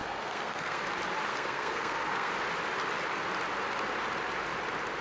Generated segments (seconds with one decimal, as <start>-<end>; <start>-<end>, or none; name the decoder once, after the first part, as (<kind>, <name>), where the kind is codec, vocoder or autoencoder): 0.0-0.8 (codec, SNAC); 1.3-2.3